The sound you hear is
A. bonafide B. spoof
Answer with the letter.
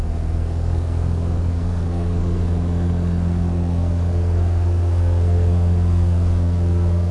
B